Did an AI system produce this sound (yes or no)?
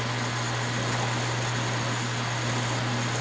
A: no